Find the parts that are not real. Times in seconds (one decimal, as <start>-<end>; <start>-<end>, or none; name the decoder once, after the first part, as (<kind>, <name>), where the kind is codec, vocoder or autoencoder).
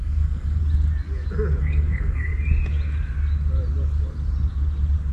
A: 0.0-0.6 (codec, SNAC); 1.6-2.3